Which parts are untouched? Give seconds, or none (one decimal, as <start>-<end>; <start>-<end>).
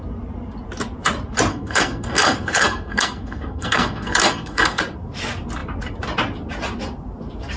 0.0-1.5; 4.8-7.6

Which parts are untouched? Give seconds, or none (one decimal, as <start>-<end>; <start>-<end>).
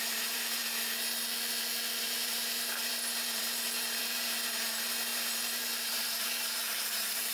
0.6-2.0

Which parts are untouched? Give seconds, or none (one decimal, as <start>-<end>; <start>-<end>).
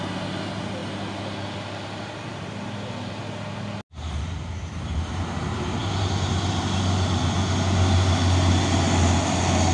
0.0-9.7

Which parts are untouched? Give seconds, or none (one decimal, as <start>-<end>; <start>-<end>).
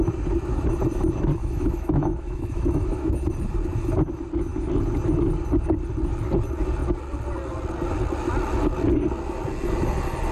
0.0-1.4; 3.1-10.3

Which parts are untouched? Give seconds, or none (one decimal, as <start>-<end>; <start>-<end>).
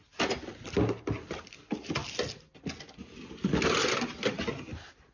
0.0-5.1